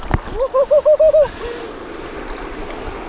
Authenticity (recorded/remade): recorded